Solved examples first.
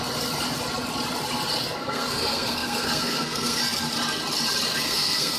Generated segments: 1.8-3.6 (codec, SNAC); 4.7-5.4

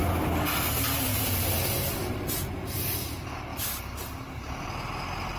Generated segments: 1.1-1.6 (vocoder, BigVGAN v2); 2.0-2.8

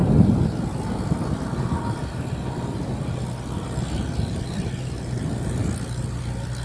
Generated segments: none

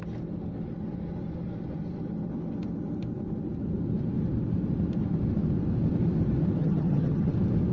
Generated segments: 6.6-7.3 (vocoder, HiFi-GAN)